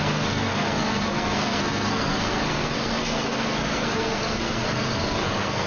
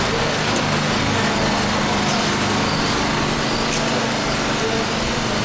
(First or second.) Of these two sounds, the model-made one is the first